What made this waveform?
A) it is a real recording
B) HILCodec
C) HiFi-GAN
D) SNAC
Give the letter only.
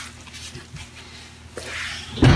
A